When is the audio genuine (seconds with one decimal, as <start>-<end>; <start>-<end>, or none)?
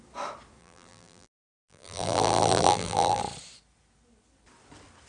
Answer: 0.0-0.6; 3.2-5.1